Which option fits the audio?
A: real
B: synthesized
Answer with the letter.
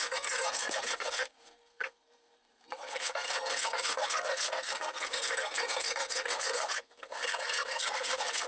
B